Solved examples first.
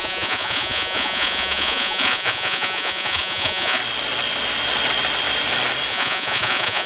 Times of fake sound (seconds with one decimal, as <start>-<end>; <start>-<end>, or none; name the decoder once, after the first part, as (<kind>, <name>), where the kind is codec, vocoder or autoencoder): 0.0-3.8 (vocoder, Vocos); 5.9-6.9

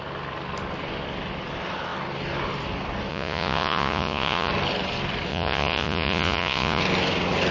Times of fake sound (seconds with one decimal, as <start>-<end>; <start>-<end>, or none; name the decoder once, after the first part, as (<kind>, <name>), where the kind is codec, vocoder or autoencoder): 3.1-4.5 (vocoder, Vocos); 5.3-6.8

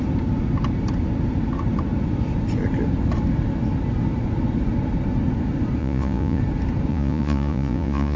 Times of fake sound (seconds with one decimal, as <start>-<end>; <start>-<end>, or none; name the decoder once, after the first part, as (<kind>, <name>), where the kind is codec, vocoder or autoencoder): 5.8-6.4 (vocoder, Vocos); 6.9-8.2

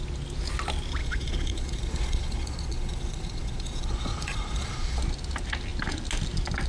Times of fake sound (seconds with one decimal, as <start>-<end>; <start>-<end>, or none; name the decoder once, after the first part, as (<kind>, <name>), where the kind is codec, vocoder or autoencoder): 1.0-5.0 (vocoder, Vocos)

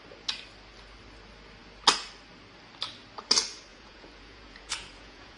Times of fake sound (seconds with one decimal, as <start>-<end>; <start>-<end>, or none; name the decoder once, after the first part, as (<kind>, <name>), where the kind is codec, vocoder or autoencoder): 3.7-5.4 (vocoder, Vocos)

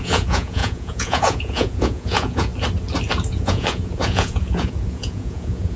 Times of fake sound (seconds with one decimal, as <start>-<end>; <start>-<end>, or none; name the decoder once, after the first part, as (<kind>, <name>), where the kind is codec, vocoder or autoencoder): 0.0-2.5 (vocoder, Vocos); 3.3-5.8

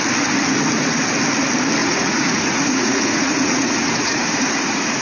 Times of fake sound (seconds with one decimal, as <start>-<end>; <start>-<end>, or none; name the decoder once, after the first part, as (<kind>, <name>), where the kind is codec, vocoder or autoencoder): 1.8-5.0 (vocoder, Vocos)

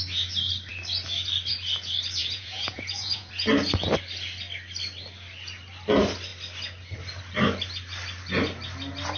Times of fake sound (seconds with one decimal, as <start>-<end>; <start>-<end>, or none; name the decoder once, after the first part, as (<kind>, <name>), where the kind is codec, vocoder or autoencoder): 2.2-3.3 (vocoder, Vocos)